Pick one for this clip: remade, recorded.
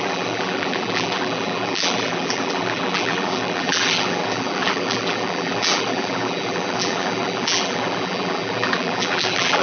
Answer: remade